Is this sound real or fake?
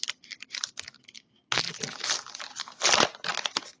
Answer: real